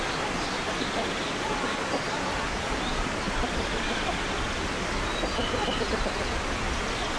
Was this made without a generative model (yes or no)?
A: yes